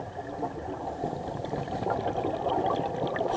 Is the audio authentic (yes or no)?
yes